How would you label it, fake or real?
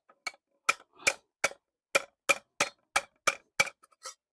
real